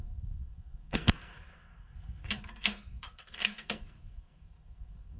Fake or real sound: fake